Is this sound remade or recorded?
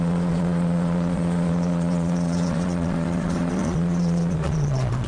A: remade